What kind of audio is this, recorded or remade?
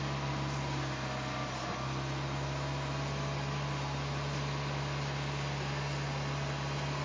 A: recorded